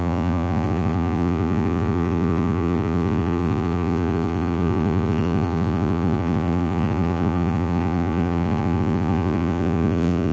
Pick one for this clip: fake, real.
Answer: fake